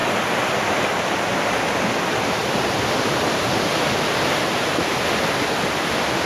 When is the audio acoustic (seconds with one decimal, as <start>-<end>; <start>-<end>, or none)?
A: 0.0-6.3